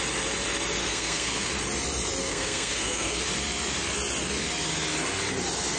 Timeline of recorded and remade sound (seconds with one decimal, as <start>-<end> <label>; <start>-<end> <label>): 0.0-0.8 recorded; 0.8-1.5 remade; 1.5-2.2 recorded; 2.2-3.2 remade; 3.2-5.8 recorded